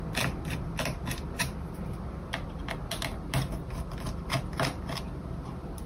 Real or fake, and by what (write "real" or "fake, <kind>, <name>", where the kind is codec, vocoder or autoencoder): real